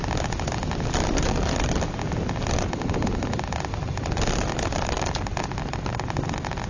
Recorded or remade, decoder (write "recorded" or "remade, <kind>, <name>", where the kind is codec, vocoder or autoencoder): recorded